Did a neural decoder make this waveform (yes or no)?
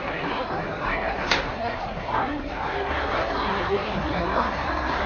yes